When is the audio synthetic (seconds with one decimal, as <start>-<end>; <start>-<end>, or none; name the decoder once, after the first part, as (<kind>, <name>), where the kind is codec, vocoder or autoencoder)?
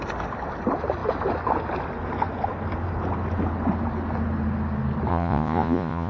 5.1-6.1 (vocoder, Vocos)